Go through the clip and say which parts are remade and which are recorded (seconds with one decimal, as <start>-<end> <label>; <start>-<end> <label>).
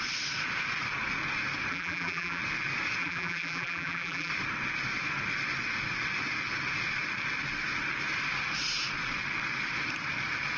0.0-1.7 recorded; 1.7-2.4 remade; 2.4-3.0 recorded; 3.0-4.3 remade; 4.3-10.6 recorded